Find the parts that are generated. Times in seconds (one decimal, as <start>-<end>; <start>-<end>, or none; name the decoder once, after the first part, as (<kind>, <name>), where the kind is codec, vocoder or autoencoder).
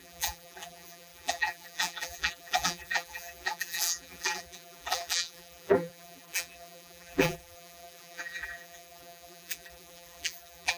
0.0-10.8 (vocoder, BigVGAN v2)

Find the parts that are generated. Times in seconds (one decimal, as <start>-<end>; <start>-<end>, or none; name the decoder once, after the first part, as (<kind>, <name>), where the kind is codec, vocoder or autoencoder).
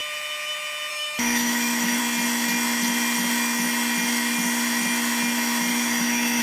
0.9-2.0 (autoencoder, DAC-VAE); 5.7-6.4